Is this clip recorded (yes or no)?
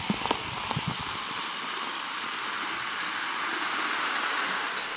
yes